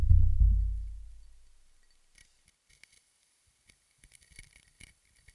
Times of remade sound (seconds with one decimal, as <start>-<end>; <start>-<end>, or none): none